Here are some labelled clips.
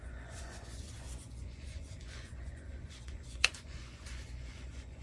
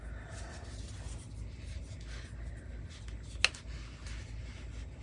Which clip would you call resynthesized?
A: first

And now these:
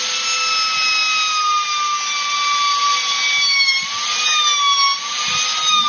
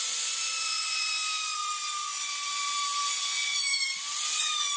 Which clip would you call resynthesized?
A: second